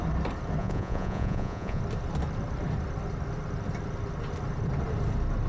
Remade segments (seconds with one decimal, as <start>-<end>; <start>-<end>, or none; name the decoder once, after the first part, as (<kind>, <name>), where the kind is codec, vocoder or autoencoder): 0.6-1.8 (vocoder, Vocos)